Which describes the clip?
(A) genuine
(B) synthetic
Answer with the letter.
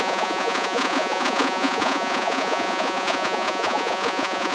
B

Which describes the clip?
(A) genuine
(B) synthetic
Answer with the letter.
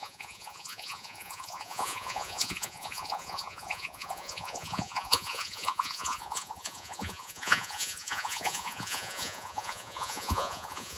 B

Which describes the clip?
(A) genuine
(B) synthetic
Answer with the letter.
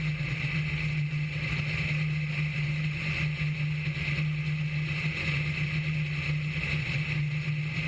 A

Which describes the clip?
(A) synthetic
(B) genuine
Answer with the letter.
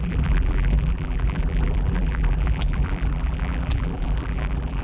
A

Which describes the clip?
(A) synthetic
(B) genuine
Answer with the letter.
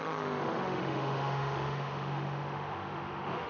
A